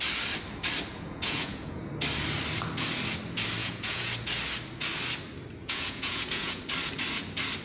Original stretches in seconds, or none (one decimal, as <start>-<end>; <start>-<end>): 0.0-0.9; 1.9-3.6; 4.1-5.6; 6.6-7.6